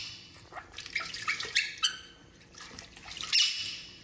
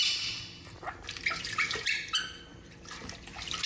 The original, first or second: second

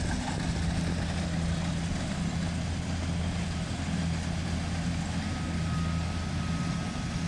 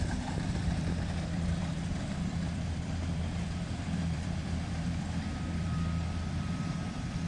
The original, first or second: first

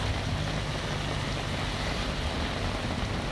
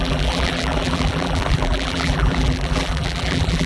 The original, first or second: first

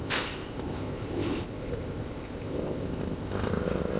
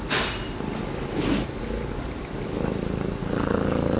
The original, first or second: second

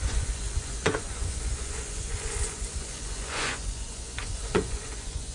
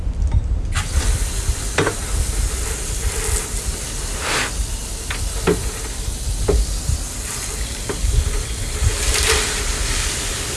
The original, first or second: second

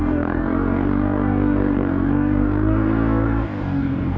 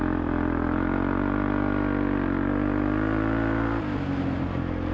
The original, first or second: second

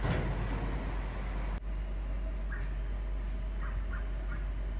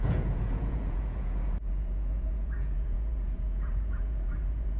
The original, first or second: first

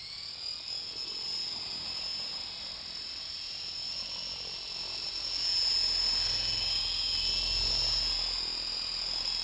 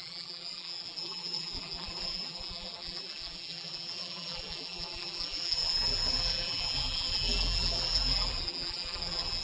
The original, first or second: first